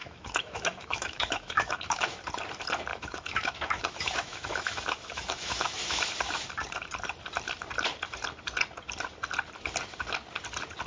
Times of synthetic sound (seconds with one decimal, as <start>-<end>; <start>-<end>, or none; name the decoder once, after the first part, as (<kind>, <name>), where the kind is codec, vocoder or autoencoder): 0.0-2.2 (autoencoder, DAC-VAE); 2.9-6.0